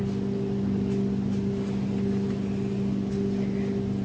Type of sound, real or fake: real